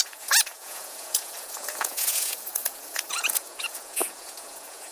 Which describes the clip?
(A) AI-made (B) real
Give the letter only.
A